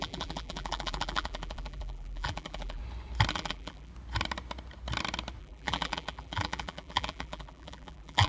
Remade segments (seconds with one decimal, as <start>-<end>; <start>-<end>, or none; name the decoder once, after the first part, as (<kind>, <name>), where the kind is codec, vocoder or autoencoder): 0.0-2.8 (vocoder, BigVGAN v2); 3.3-3.9; 5.4-8.3